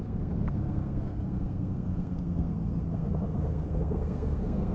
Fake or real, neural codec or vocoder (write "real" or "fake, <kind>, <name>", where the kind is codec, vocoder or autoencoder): fake, codec, SNAC